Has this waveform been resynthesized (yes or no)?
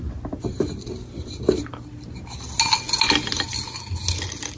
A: no